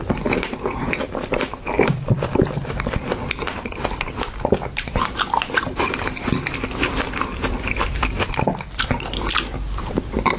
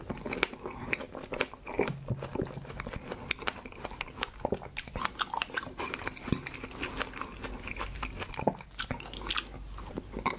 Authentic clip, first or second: second